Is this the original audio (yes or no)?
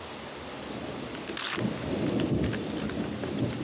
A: yes